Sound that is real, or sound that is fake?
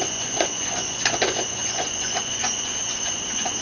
fake